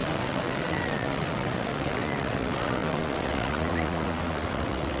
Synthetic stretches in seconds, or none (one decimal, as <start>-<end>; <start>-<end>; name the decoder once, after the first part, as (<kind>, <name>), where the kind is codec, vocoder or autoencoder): 0.0-5.0 (vocoder, WaveNeXt)